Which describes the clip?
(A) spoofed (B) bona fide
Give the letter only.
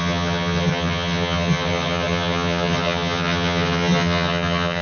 A